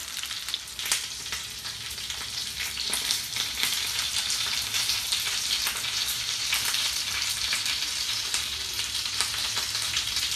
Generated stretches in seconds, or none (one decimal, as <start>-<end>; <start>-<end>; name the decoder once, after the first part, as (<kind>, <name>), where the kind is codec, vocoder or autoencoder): 1.5-10.4 (vocoder, BigVGAN v2)